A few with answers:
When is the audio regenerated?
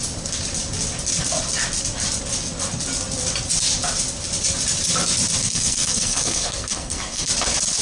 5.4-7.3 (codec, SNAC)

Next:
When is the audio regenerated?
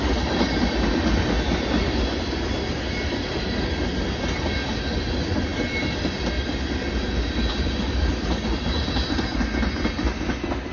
none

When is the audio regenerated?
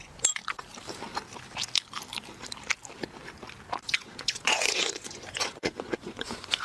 0.0-0.4 (vocoder, Vocos); 3.8-6.6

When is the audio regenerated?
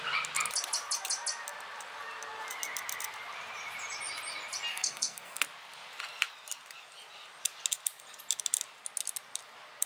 4.7-5.4 (codec, SNAC)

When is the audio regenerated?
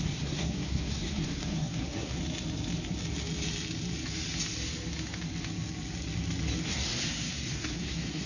0.0-2.2 (codec, SNAC); 6.7-8.3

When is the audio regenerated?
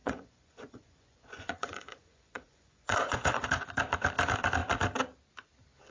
0.0-3.5 (vocoder, Vocos)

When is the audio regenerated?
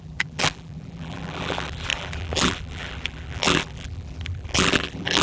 0.0-5.2 (vocoder, BigVGAN v2)